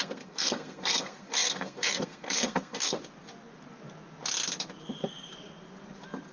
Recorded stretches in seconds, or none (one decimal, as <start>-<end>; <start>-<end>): 3.0-6.3